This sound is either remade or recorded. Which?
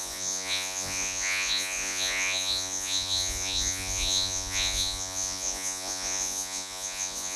remade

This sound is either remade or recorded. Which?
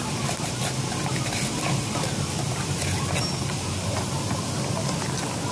recorded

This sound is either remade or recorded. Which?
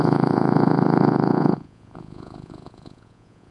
remade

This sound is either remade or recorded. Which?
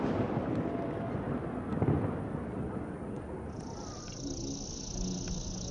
recorded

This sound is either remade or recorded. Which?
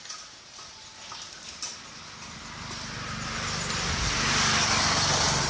recorded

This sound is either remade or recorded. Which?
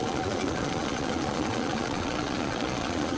remade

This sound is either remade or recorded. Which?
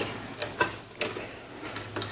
recorded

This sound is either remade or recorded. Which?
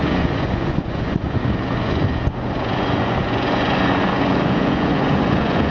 remade